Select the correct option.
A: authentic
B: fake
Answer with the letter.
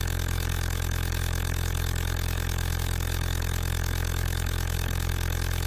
B